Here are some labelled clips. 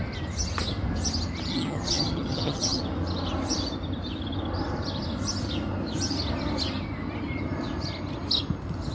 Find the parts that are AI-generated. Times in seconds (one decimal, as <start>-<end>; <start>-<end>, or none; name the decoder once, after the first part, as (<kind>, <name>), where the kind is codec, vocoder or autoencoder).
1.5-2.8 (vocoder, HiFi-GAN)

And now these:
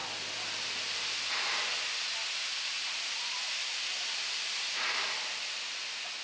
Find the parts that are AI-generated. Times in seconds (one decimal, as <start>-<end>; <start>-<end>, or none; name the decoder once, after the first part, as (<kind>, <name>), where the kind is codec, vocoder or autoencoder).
none

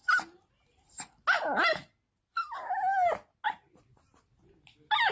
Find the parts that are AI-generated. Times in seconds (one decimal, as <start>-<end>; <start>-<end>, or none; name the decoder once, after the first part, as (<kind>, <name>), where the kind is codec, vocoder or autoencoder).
none

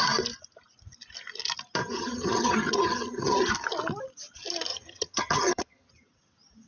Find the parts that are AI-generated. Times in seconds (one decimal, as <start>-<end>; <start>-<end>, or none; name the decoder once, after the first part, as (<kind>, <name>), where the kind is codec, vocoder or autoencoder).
1.8-3.5 (vocoder, HiFi-GAN); 4.7-5.9